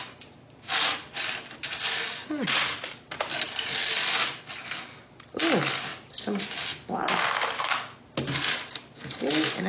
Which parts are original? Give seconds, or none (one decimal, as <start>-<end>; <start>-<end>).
0.0-9.7